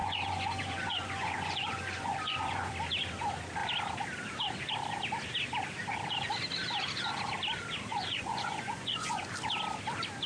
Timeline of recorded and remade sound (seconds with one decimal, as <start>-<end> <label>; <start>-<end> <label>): 0.0-2.7 remade; 2.7-7.9 recorded; 7.9-9.3 remade; 9.3-10.3 recorded